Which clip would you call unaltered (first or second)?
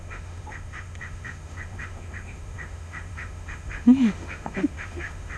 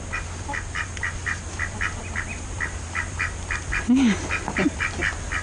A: second